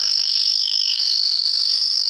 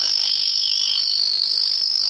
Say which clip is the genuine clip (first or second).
second